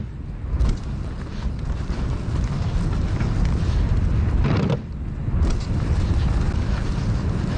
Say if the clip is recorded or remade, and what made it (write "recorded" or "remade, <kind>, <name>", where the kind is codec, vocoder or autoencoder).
recorded